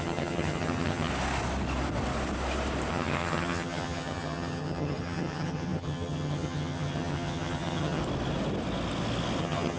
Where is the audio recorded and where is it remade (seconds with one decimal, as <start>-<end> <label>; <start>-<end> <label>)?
0.0-1.1 remade; 1.1-2.9 recorded; 2.9-8.0 remade; 8.0-9.4 recorded; 9.4-9.8 remade